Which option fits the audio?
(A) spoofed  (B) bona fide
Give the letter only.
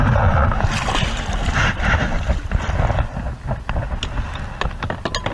B